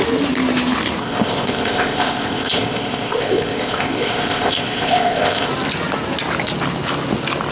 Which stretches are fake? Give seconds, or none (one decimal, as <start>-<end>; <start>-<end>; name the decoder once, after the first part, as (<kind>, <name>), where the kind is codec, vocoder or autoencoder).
1.0-5.5 (codec, ZipCodec)